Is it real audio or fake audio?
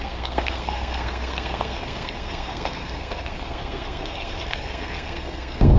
fake